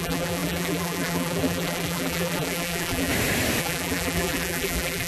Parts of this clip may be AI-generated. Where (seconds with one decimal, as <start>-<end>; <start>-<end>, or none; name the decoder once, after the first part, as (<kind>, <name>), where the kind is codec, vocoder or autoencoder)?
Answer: 0.0-3.1 (vocoder, BigVGAN v2); 3.6-5.1